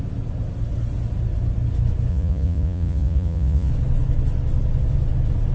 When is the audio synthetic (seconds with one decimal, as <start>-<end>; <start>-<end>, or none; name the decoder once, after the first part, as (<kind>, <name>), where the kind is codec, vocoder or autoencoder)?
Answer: 2.1-3.7 (vocoder, Vocos)